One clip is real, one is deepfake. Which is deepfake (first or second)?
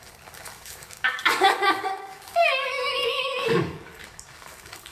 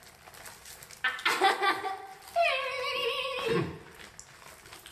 first